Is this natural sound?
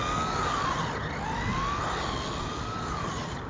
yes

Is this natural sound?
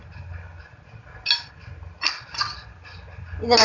yes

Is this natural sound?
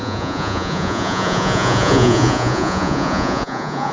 no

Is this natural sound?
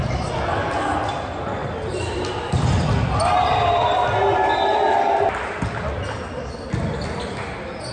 yes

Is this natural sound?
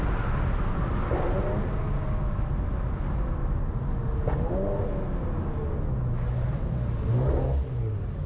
yes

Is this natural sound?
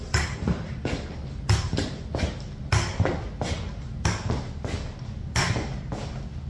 yes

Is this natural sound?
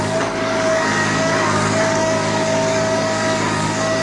no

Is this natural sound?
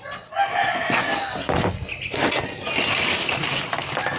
yes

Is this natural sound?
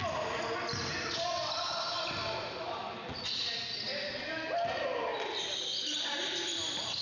yes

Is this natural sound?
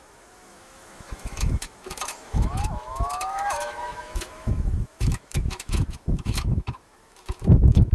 no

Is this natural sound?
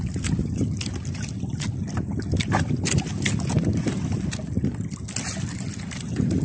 yes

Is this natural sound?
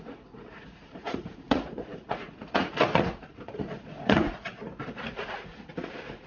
no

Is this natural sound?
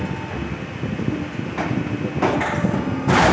yes